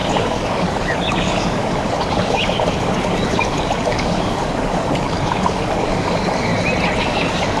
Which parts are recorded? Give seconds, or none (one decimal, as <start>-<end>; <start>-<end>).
6.5-7.0